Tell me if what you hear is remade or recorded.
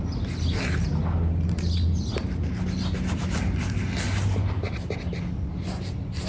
recorded